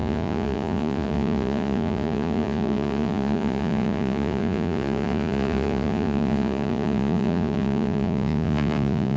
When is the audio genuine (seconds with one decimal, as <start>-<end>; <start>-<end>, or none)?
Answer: none